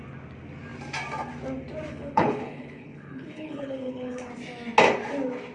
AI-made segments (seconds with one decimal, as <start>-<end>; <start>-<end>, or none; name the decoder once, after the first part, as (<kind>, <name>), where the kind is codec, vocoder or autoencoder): 1.9-4.3 (codec, HILCodec)